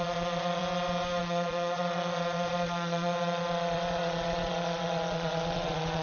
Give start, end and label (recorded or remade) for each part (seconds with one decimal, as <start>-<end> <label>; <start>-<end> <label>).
0.0-0.6 remade; 0.6-1.2 recorded; 1.2-6.0 remade